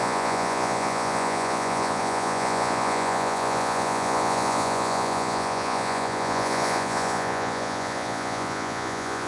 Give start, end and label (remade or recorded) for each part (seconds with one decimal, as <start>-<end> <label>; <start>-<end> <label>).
0.0-9.3 remade